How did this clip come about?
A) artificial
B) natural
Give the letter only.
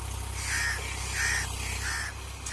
B